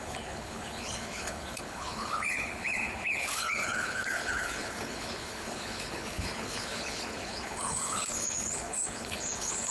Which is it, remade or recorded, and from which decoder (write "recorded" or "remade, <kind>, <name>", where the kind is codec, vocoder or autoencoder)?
remade, codec, HILCodec